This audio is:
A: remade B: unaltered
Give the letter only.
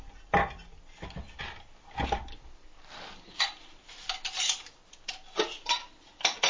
B